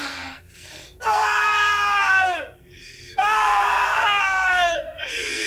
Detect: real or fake fake